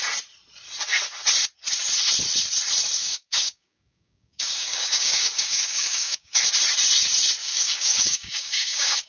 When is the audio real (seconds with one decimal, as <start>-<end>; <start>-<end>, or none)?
0.0-3.0; 6.4-7.4